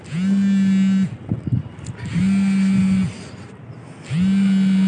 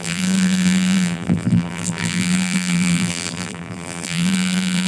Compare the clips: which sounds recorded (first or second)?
first